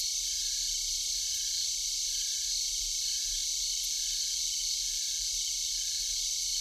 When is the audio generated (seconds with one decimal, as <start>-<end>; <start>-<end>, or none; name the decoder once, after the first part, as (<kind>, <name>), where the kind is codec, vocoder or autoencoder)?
0.0-3.4 (vocoder, BigVGAN v2); 6.0-6.6